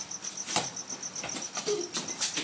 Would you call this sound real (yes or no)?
yes